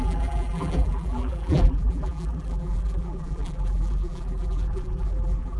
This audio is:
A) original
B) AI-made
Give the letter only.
B